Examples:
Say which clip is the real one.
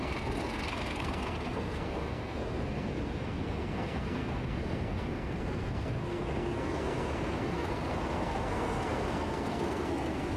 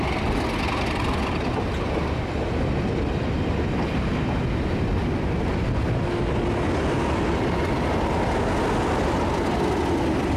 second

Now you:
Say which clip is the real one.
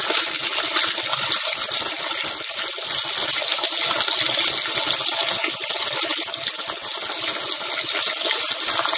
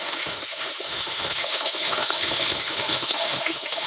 first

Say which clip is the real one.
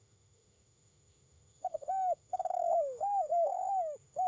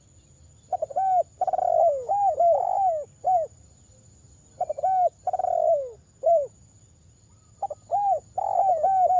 second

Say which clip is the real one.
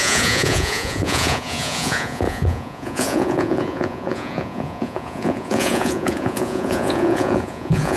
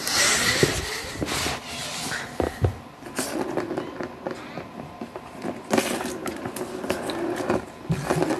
second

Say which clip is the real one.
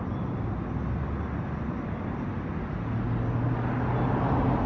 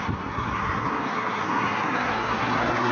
first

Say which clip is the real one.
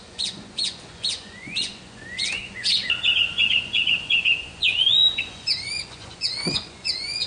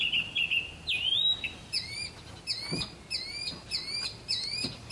second